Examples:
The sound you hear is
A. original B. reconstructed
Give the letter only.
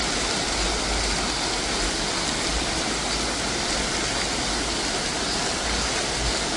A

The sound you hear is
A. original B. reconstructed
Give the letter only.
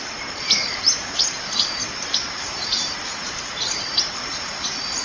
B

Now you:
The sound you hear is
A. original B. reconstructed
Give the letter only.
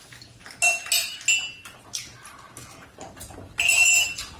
A